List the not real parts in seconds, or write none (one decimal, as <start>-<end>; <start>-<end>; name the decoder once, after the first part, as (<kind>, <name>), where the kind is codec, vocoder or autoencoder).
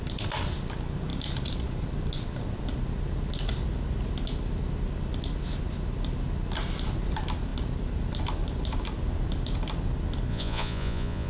10.3-11.3 (vocoder, Vocos)